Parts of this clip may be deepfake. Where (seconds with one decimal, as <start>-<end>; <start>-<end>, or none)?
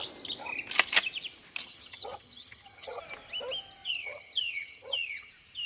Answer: 1.6-3.0; 3.9-5.3